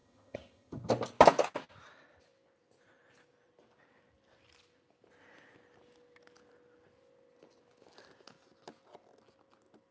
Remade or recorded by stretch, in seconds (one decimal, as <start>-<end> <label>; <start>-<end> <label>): 0.0-0.9 remade; 0.9-9.9 recorded